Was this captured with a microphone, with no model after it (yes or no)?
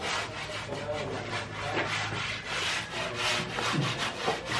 yes